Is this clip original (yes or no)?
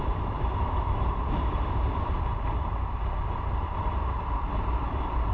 no